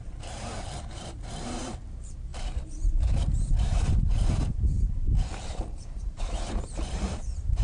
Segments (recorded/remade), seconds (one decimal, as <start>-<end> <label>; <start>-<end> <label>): 0.0-2.3 remade; 2.3-2.9 recorded; 2.9-7.6 remade